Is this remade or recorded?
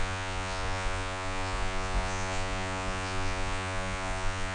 remade